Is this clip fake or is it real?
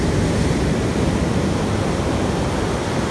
real